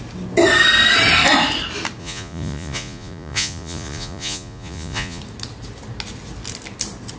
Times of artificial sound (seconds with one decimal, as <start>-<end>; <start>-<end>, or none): 2.0-5.2